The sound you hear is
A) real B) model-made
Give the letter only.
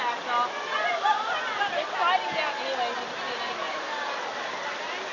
A